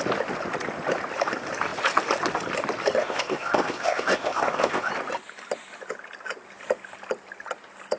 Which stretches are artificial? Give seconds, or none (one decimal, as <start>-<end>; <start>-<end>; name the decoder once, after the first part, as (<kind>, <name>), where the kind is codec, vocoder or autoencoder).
3.0-4.9 (codec, ZipCodec)